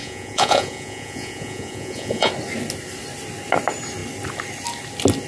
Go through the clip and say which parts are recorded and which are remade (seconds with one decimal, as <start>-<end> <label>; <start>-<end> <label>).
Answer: 0.0-2.3 remade; 2.3-5.3 recorded